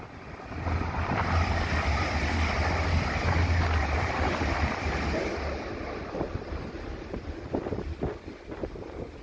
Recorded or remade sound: recorded